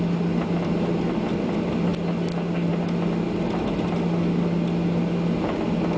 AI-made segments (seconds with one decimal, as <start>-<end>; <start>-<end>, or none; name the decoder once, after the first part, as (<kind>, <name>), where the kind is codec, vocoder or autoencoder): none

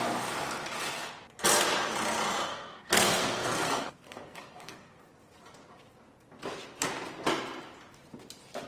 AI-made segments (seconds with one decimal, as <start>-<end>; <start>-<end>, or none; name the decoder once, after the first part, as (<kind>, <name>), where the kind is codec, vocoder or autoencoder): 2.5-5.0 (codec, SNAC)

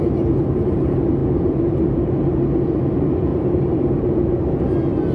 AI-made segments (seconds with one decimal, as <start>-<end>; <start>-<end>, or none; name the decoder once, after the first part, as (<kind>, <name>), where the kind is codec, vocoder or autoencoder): 3.3-4.6 (vocoder, BigVGAN v2)

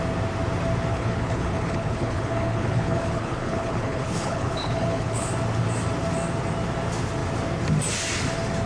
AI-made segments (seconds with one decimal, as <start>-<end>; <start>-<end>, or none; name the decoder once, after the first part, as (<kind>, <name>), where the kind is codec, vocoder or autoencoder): 0.9-5.3 (codec, HILCodec)

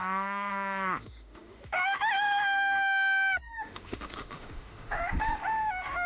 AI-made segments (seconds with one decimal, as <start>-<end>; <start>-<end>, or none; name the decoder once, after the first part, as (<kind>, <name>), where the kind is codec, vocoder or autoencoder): 0.0-6.1 (autoencoder, DAC-VAE)

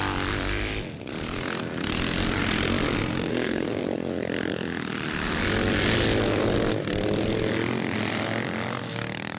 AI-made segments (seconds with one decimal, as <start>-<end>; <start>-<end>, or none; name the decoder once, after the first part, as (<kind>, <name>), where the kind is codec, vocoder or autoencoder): 3.0-3.7 (codec, SNAC)